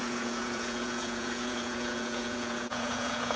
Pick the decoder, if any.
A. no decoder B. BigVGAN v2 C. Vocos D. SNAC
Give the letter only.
C